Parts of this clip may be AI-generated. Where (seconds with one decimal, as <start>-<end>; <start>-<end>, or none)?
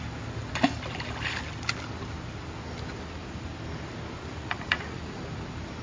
4.3-5.0